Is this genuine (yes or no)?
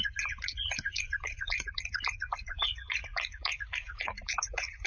no